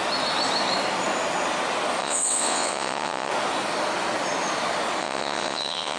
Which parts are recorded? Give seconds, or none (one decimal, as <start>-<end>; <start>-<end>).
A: 0.0-2.0; 3.3-5.0